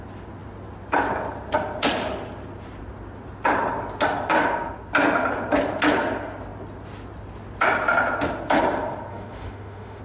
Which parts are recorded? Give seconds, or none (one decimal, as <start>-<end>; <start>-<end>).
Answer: 0.0-9.1